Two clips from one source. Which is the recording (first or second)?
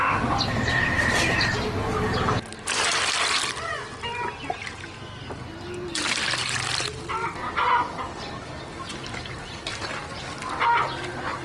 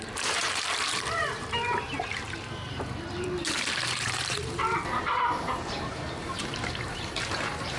first